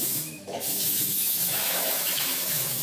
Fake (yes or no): yes